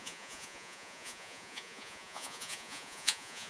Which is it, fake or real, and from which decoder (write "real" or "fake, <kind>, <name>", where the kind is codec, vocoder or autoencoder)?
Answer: fake, vocoder, Vocos